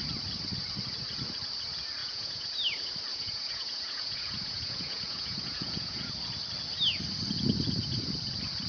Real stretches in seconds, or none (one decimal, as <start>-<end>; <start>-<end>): 0.0-2.0; 2.5-3.1; 6.1-8.7